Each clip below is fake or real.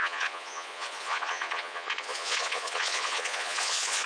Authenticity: fake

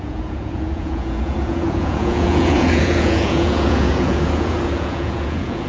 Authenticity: fake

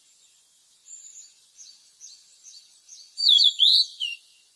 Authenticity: fake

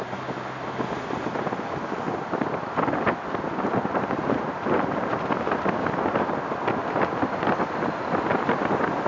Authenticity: real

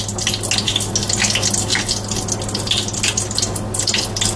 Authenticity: real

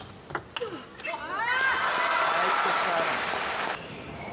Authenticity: real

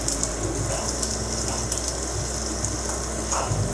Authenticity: real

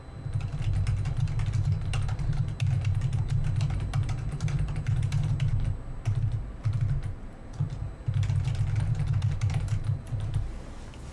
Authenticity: real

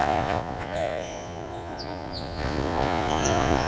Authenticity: fake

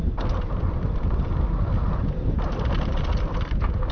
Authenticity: real